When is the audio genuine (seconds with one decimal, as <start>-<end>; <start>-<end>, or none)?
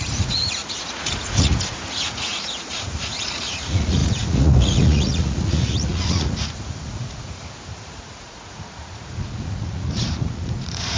7.4-8.0